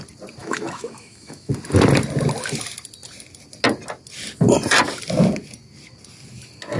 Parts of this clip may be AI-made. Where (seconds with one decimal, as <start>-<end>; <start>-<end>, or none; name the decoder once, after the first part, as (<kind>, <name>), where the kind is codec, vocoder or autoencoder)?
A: 0.4-1.5 (autoencoder, DAC-VAE)